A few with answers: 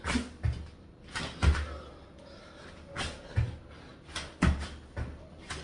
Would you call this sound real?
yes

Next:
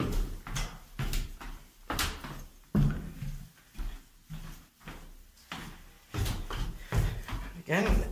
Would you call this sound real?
yes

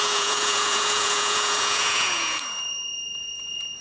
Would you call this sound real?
no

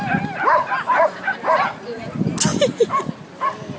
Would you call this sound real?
yes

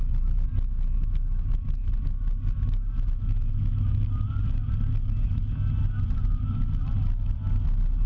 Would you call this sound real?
yes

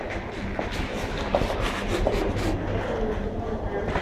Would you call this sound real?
yes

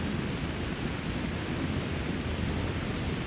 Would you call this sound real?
yes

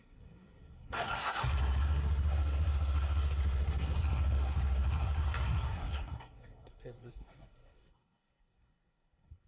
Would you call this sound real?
no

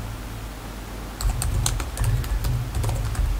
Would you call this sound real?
yes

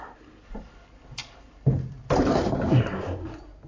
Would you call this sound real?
yes